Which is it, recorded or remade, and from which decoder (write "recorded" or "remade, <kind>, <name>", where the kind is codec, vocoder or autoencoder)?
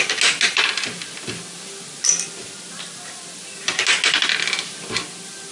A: recorded